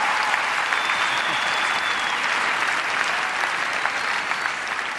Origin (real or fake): real